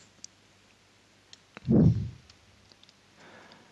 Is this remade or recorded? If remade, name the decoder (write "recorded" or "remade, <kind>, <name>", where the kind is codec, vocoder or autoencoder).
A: recorded